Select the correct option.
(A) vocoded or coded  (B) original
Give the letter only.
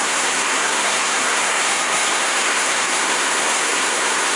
A